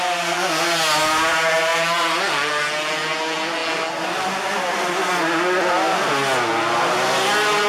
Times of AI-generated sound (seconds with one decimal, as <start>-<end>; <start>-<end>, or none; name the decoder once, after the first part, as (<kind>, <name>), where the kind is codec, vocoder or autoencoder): none